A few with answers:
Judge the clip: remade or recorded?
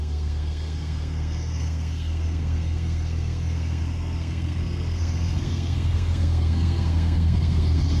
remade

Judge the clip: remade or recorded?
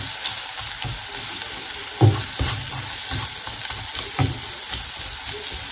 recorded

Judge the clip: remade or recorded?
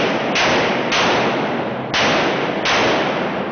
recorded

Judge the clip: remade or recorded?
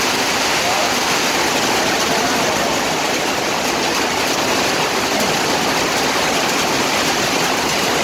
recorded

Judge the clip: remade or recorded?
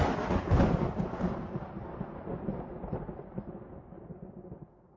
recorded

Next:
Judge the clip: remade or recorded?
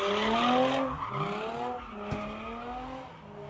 recorded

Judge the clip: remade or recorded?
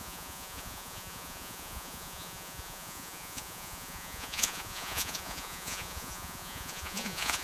remade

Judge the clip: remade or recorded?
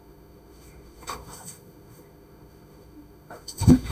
remade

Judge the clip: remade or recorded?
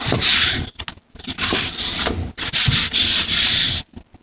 recorded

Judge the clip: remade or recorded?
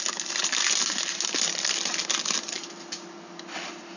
recorded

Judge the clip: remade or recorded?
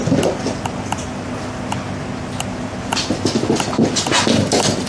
recorded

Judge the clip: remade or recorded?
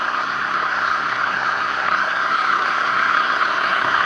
remade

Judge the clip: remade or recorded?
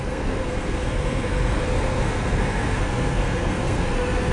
remade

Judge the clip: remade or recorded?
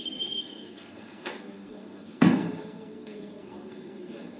remade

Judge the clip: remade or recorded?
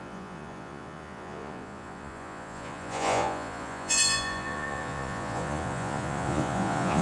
remade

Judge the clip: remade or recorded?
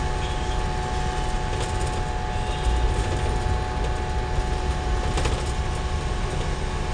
recorded